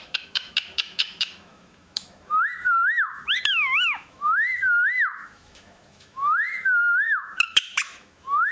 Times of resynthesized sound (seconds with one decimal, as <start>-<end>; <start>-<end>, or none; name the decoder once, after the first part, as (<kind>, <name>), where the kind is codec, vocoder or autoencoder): 0.0-8.5 (autoencoder, DAC-VAE)